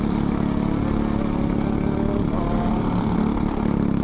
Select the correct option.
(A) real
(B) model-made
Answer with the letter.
A